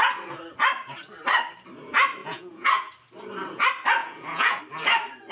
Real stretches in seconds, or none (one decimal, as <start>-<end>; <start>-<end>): 0.0-2.2; 2.9-4.0; 4.6-5.3